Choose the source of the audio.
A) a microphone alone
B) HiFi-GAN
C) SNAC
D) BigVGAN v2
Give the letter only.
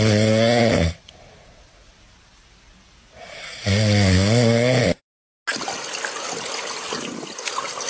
A